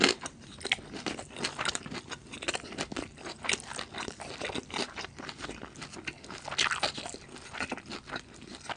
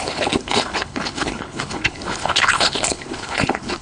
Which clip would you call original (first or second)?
first